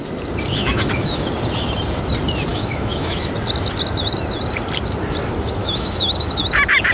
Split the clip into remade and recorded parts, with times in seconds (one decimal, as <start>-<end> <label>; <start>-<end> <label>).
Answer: 0.0-0.5 recorded; 0.5-1.3 remade; 1.3-2.5 recorded; 2.5-3.3 remade; 3.3-5.6 recorded; 5.6-6.4 remade; 6.4-6.9 recorded